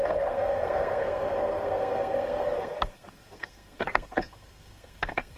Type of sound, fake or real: fake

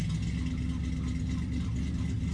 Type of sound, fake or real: real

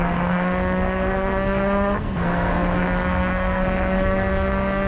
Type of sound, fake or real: fake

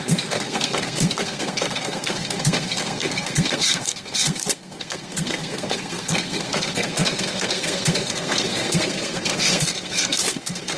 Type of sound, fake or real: fake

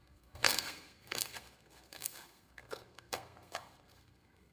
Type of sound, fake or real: fake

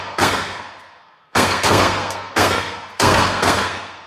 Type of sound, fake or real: fake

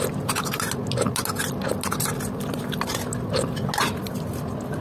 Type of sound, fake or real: real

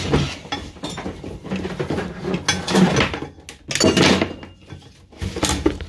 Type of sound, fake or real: real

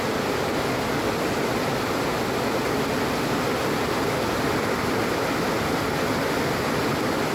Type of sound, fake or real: real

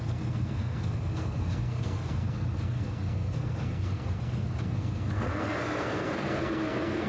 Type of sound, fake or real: fake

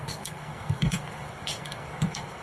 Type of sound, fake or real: fake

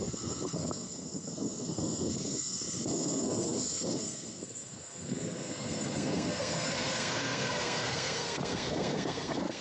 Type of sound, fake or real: fake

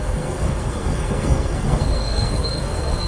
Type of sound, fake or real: fake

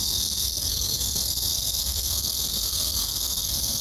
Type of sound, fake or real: fake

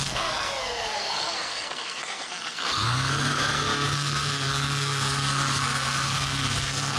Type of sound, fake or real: fake